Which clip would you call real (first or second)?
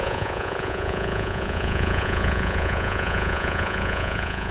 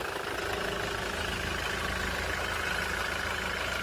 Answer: second